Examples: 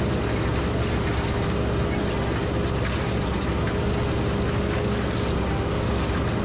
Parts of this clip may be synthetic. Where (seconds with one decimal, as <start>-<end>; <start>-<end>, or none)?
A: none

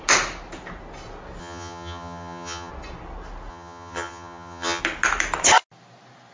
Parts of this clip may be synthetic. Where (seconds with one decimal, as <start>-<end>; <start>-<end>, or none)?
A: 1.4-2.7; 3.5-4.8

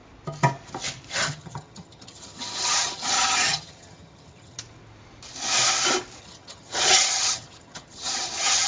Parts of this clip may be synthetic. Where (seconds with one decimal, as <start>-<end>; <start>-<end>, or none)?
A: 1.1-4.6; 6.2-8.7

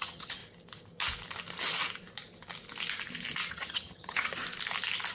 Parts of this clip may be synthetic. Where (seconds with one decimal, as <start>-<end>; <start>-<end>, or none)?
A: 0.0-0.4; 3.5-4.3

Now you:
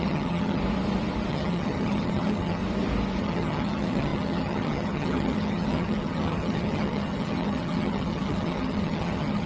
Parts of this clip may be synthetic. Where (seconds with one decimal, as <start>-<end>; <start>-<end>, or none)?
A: 0.0-0.6; 1.3-2.6; 3.2-9.5

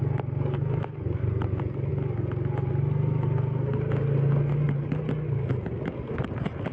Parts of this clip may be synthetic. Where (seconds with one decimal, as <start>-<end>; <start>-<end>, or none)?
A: none